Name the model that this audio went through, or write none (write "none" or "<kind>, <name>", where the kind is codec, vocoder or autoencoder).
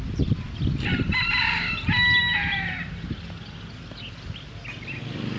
none